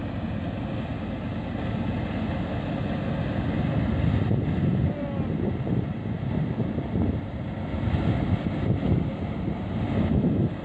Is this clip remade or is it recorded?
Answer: recorded